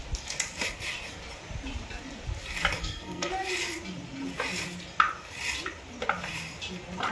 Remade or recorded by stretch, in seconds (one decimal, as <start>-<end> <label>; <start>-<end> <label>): 0.0-2.8 recorded; 2.8-3.3 remade; 3.3-7.1 recorded